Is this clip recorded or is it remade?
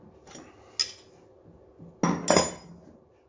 recorded